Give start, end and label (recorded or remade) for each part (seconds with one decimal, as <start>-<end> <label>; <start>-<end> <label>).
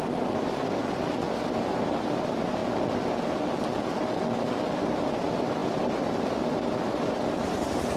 0.0-0.8 remade; 0.8-1.3 recorded; 1.3-2.6 remade; 2.6-4.9 recorded; 4.9-8.0 remade